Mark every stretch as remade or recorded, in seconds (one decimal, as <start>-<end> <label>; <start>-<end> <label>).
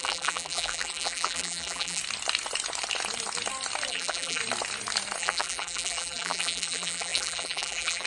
0.0-2.0 remade; 2.0-3.9 recorded; 3.9-4.4 remade; 4.4-5.2 recorded; 5.2-8.1 remade